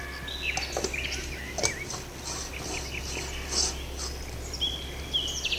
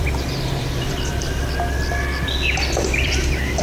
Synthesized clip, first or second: second